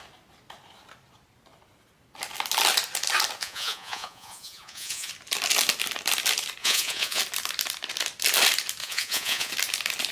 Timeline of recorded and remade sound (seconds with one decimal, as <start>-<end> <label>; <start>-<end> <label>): 0.0-3.4 recorded; 3.4-5.1 remade; 5.1-6.6 recorded; 6.6-7.2 remade; 7.2-8.8 recorded; 8.8-9.5 remade; 9.5-10.1 recorded